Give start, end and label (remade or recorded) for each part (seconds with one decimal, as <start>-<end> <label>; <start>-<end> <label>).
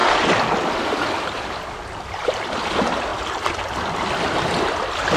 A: 0.0-2.0 recorded; 2.0-5.2 remade